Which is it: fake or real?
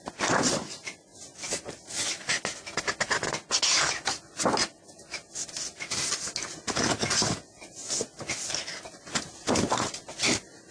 real